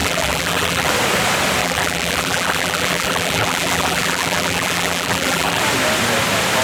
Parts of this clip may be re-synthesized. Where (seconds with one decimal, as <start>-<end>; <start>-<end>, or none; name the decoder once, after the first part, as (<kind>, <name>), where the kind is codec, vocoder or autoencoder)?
0.0-0.9 (vocoder, BigVGAN v2); 1.6-5.6